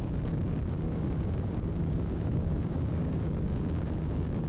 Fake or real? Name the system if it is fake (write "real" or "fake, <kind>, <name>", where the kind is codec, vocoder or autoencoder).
fake, codec, DAC